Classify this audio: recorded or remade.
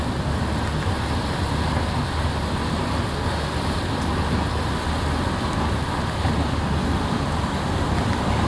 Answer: recorded